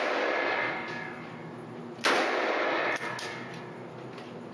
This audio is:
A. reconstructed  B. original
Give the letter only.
B